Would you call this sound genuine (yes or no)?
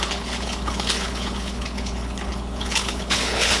no